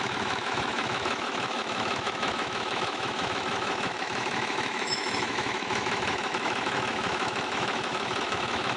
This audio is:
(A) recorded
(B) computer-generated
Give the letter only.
B